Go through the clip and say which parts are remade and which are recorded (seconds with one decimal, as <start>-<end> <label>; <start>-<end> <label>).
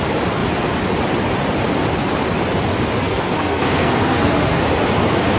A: 0.0-3.0 recorded; 3.0-4.6 remade; 4.6-5.4 recorded